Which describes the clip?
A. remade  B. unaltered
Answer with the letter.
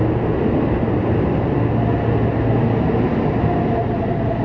B